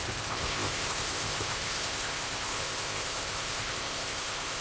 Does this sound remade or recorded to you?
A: remade